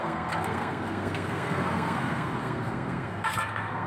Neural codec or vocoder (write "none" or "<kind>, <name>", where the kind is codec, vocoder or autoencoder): codec, SNAC